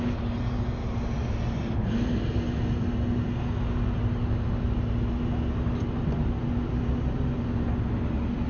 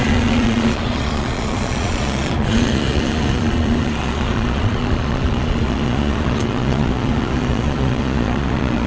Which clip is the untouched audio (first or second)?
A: first